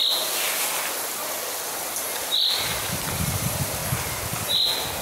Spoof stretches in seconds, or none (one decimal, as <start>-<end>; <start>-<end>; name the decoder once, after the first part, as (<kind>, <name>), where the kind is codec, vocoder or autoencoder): 0.0-3.8 (vocoder, BigVGAN v2)